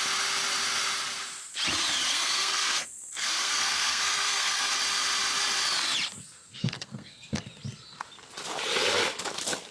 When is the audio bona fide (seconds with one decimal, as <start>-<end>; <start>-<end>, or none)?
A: 0.0-2.1; 4.7-6.2; 7.5-9.7